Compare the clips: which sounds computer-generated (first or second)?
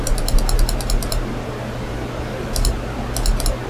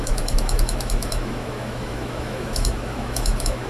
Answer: second